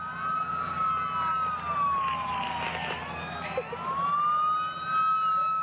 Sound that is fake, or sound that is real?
real